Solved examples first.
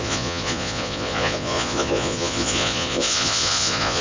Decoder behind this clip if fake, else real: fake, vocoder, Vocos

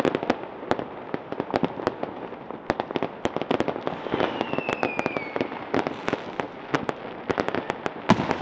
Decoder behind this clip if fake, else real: real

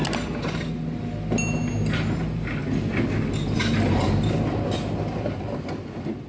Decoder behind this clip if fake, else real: real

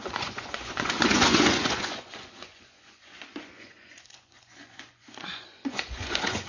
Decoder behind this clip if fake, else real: fake, vocoder, Vocos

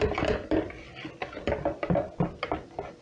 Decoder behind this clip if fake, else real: real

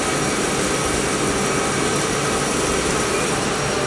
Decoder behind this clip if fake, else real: real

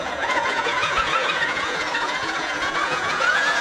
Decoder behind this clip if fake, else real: fake, vocoder, Vocos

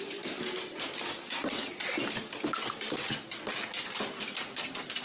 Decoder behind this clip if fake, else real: real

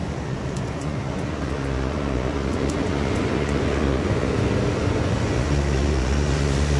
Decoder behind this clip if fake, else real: fake, vocoder, Vocos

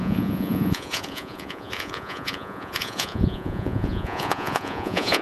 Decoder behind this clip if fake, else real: fake, vocoder, Vocos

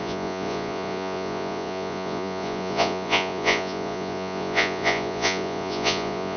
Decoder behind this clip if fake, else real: fake, vocoder, Vocos